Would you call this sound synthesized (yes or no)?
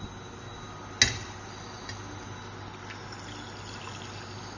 no